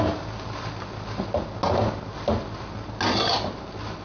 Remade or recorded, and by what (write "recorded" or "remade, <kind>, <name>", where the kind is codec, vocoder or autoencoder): recorded